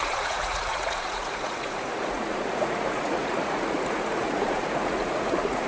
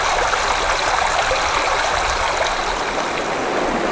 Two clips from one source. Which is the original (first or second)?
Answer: second